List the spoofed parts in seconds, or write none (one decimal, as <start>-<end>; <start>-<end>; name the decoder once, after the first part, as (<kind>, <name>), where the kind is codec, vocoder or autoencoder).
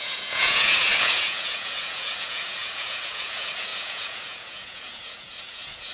0.0-5.9 (vocoder, Vocos)